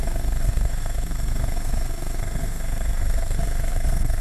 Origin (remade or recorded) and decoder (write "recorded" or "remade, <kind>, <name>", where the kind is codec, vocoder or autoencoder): remade, codec, SNAC